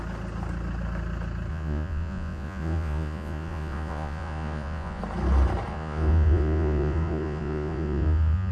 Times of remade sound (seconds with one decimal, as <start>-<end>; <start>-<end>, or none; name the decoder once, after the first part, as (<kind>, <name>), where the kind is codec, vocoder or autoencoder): 1.5-5.0 (vocoder, Vocos); 5.7-8.5